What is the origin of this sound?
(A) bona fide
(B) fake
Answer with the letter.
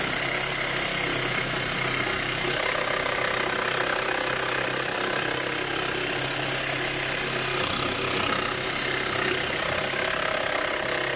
A